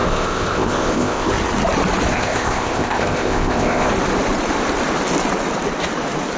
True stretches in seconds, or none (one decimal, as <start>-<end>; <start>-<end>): 1.3-2.1; 3.9-6.4